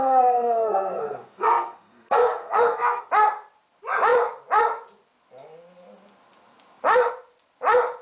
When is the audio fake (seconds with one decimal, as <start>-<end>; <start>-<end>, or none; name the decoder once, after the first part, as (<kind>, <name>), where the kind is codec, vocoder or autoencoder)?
0.0-3.0 (codec, SNAC)